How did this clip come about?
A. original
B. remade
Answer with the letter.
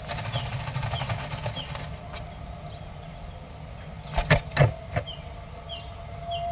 A